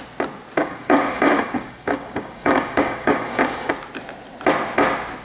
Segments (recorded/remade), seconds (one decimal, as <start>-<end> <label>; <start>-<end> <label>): 0.0-0.6 recorded; 0.6-3.7 remade; 3.7-5.2 recorded